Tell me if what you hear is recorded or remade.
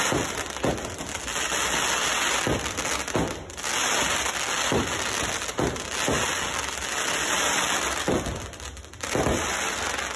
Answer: recorded